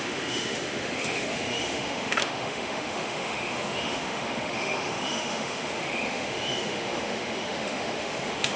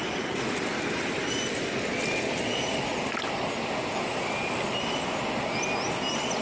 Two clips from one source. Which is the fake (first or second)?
first